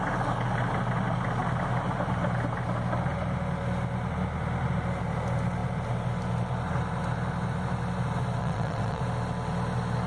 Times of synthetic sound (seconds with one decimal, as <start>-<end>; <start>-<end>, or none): 8.4-9.0